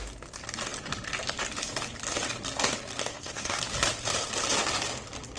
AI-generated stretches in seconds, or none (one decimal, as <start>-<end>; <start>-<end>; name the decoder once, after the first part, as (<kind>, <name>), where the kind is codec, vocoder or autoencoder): 3.1-3.6 (codec, SNAC)